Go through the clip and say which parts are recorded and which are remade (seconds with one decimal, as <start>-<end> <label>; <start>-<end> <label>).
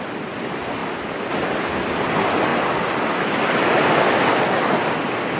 0.0-5.4 recorded